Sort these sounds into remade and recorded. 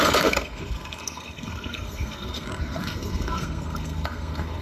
remade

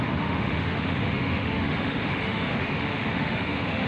remade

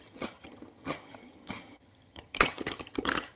remade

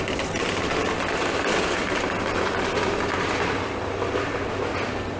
recorded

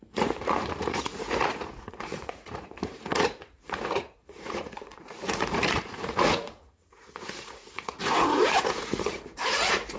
remade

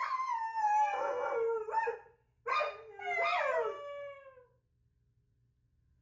recorded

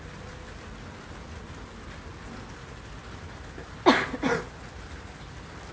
recorded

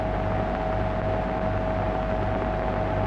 recorded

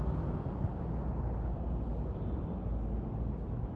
recorded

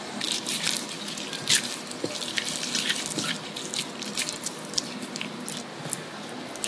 recorded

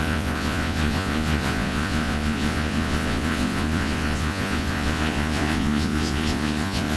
remade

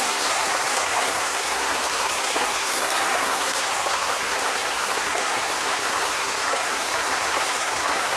remade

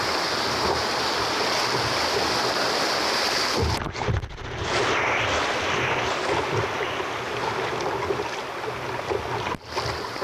recorded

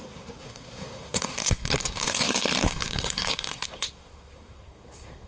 remade